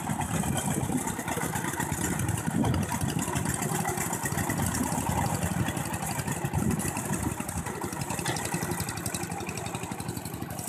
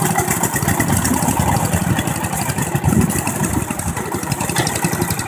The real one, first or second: first